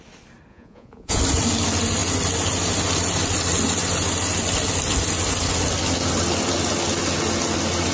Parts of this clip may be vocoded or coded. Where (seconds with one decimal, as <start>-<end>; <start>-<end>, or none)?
0.5-1.2